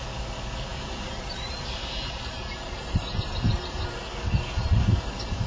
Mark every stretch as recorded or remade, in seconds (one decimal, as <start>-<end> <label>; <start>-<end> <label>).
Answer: 0.0-0.7 recorded; 0.7-4.0 remade; 4.0-5.5 recorded